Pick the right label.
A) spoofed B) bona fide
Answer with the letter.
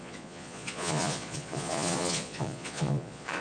A